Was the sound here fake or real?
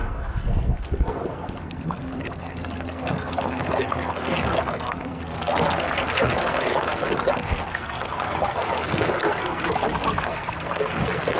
fake